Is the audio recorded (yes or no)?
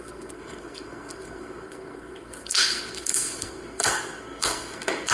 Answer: no